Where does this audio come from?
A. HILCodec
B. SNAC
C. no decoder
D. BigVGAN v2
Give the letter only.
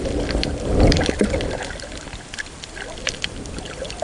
C